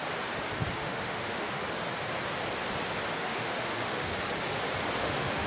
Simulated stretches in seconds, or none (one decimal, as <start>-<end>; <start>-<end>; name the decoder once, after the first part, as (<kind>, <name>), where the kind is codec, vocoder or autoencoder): 0.7-1.6 (autoencoder, DAC-VAE); 3.2-4.1; 5.0-5.5